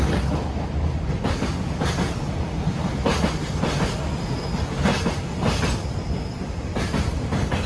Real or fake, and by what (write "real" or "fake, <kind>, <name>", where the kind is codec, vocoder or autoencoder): real